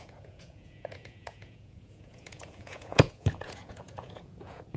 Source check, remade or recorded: remade